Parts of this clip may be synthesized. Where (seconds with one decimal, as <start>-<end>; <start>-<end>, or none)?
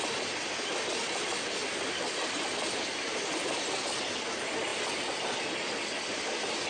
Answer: none